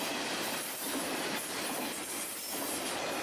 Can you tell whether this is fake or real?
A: real